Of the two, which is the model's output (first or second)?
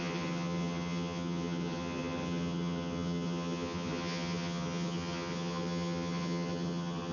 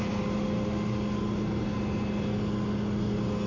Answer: first